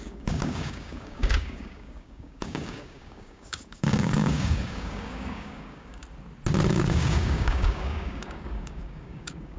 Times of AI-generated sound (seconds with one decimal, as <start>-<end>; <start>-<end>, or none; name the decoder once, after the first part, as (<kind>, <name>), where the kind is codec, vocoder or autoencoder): 0.0-6.0 (codec, DAC); 6.7-9.6

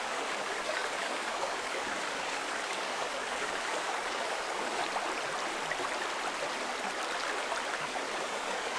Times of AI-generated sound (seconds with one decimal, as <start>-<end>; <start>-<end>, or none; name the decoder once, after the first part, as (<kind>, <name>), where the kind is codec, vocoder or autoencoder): 0.0-4.8 (codec, DAC); 7.8-8.8

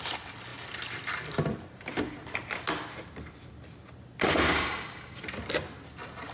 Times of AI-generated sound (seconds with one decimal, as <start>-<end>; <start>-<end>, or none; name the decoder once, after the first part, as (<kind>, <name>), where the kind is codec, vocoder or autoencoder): 4.5-5.2 (codec, DAC)

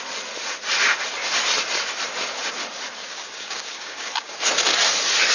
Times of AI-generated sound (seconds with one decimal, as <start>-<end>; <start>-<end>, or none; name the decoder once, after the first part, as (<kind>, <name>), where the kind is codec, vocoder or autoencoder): 3.0-4.5 (codec, DAC)